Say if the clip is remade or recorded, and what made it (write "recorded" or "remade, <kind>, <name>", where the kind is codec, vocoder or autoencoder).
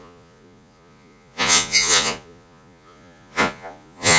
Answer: remade, vocoder, Vocos